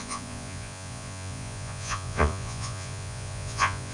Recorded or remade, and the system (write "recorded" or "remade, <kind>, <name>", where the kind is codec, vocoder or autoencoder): remade, vocoder, Vocos